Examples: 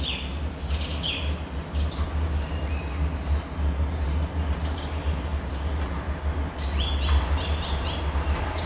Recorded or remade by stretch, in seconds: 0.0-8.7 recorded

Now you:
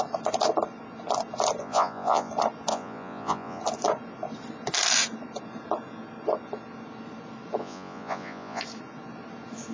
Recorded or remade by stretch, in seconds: 0.0-1.6 recorded; 1.6-2.3 remade; 2.3-2.7 recorded; 2.7-3.6 remade; 3.6-7.6 recorded; 7.6-8.6 remade; 8.6-9.7 recorded

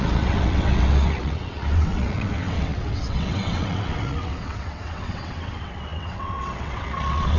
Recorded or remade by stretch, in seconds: 0.0-7.4 remade

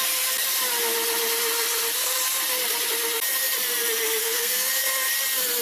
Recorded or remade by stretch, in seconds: 0.0-4.2 recorded; 4.2-4.7 remade; 4.7-5.6 recorded